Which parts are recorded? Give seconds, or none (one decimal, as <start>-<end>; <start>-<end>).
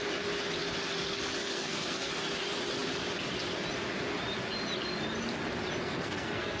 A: 0.0-1.4; 2.1-5.8